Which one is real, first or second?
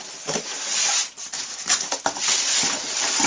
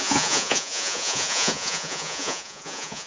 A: first